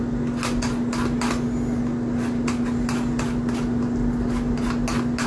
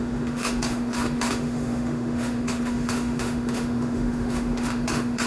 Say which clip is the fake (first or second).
second